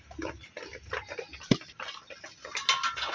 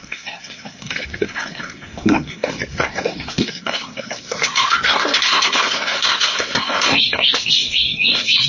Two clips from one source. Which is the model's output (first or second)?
second